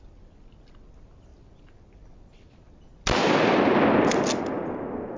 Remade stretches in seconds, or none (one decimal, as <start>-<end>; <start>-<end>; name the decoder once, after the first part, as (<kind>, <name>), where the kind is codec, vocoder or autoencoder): none

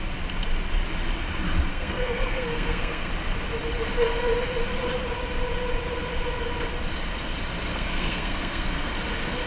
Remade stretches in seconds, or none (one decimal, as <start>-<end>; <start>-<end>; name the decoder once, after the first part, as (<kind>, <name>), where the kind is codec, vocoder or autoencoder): 1.7-3.1 (codec, SNAC); 7.7-8.9